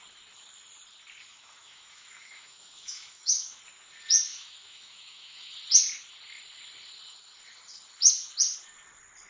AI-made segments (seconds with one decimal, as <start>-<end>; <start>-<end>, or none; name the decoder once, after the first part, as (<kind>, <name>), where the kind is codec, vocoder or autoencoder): 1.3-3.6 (autoencoder, DAC-VAE); 4.3-5.5